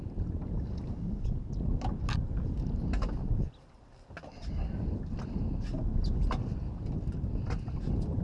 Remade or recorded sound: recorded